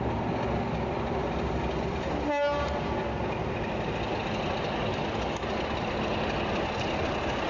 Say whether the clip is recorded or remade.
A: recorded